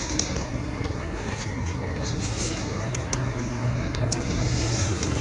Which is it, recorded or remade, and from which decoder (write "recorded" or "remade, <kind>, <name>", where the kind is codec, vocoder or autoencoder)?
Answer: remade, codec, SNAC